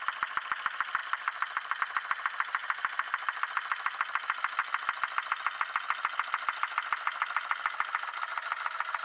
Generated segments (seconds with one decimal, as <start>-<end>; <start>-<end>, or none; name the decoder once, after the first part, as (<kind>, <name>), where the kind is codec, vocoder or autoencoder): 1.0-1.8 (vocoder, BigVGAN v2); 4.6-5.3